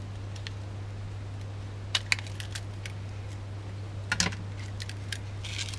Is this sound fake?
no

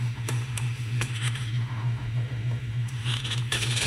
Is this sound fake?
yes